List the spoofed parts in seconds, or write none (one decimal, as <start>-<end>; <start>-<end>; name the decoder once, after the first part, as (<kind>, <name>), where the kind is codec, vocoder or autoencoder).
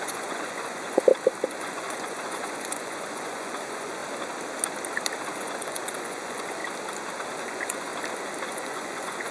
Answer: 0.0-1.1 (vocoder, Vocos); 1.6-4.0; 5.3-6.6; 7.4-7.9; 8.5-9.3